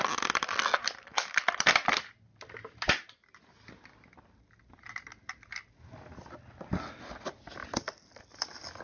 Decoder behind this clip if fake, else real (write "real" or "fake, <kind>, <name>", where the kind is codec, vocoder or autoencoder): real